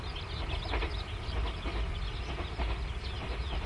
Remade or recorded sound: recorded